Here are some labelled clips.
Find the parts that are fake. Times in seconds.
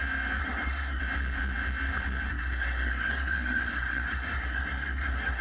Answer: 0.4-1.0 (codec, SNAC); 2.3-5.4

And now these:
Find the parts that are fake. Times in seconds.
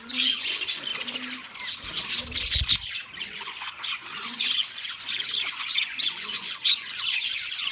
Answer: 0.0-0.9 (vocoder, Vocos); 3.2-7.7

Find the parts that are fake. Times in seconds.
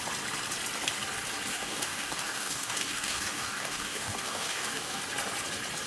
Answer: 1.5-5.0 (codec, DAC)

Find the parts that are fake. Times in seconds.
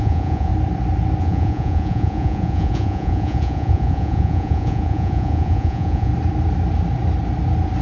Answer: 0.0-0.5 (vocoder, Vocos); 1.2-6.1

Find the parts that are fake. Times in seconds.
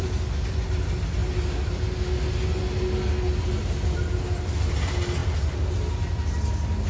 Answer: none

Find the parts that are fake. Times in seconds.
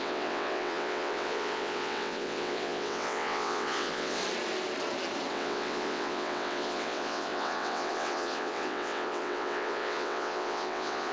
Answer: 0.0-4.2 (vocoder, WaveNeXt); 5.3-11.1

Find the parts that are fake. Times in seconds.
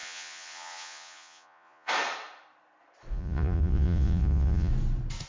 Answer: 0.0-1.9 (vocoder, Vocos); 3.1-4.7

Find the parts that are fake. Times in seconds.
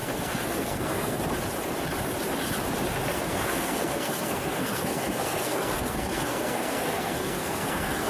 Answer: 0.0-1.2 (codec, SNAC); 3.1-8.1